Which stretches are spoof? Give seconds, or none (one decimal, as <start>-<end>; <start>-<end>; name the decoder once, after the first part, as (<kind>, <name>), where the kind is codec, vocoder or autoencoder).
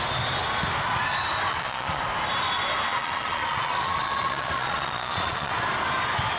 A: 1.5-2.0 (vocoder, Vocos); 2.9-5.5